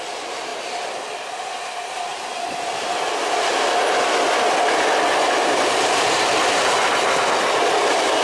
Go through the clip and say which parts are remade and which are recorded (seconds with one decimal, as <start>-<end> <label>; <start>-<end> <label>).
0.0-2.1 recorded; 2.1-3.2 remade; 3.2-5.4 recorded; 5.4-7.2 remade; 7.2-8.2 recorded